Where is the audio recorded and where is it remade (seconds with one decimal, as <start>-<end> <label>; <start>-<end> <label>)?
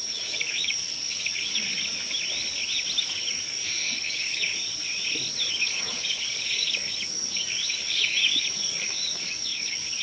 0.0-1.6 remade; 1.6-3.0 recorded; 3.0-4.5 remade; 4.5-5.5 recorded; 5.5-10.0 remade